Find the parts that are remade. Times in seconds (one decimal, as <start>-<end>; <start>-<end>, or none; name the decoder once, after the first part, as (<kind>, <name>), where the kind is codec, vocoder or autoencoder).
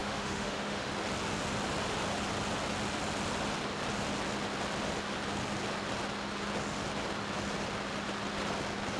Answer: 0.0-0.9 (autoencoder, DAC-VAE)